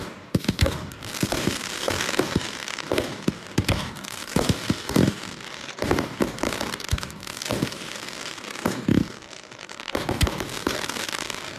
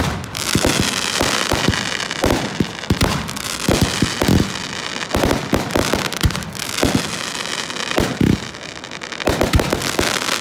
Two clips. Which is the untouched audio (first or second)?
second